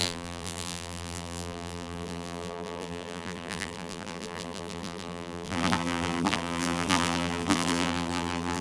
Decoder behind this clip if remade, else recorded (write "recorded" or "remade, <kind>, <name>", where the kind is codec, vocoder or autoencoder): remade, vocoder, BigVGAN v2